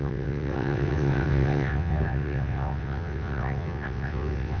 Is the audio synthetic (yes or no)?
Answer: yes